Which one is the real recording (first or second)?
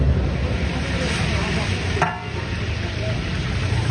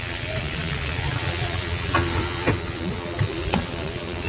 first